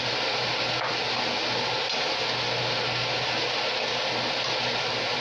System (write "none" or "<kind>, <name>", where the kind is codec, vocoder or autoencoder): none